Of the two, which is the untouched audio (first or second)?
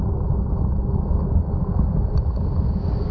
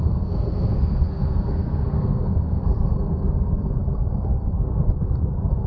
first